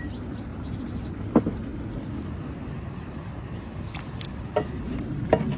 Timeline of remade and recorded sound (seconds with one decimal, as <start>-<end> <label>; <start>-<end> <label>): 0.0-5.6 recorded